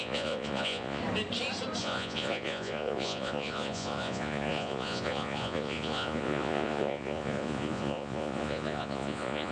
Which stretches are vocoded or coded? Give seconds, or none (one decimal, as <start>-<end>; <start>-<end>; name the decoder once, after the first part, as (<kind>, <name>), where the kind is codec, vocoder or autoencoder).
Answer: 0.0-1.0 (vocoder, Vocos); 1.8-9.5